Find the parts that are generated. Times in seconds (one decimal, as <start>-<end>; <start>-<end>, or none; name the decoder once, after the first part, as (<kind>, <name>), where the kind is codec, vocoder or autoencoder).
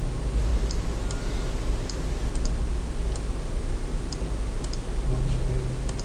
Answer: none